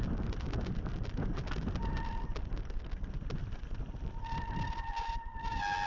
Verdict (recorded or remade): recorded